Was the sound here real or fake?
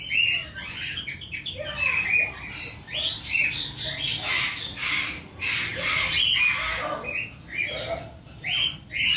real